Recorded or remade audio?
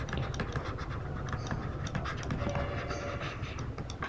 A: recorded